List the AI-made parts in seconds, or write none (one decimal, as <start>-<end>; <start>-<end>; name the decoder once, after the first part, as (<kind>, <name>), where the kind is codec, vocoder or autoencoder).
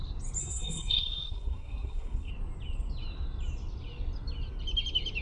0.4-2.3 (codec, SNAC)